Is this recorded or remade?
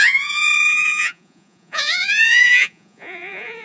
remade